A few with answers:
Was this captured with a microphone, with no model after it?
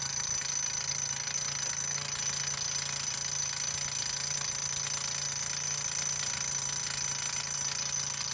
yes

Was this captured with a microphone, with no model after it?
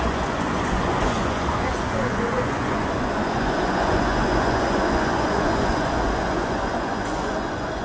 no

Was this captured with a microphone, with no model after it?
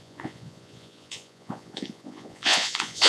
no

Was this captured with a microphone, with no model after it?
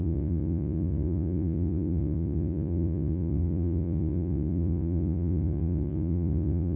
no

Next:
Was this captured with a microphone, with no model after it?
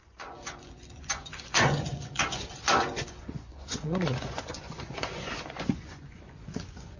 no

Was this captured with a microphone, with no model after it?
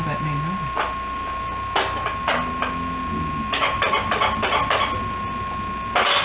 yes